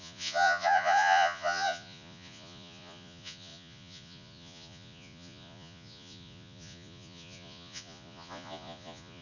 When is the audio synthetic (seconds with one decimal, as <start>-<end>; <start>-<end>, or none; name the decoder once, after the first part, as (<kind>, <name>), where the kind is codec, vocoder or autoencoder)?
0.0-9.2 (vocoder, Vocos)